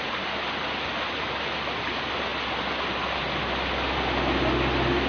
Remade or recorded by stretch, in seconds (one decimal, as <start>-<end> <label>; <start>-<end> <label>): 0.0-5.1 recorded